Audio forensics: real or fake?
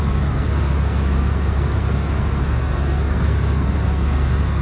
fake